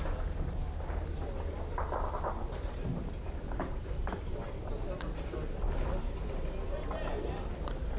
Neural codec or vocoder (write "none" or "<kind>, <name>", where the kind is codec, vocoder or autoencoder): none